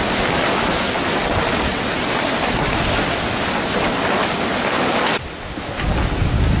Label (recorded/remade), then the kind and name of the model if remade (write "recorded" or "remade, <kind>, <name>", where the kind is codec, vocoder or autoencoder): recorded